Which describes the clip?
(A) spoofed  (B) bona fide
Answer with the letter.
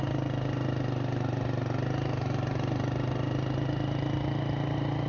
B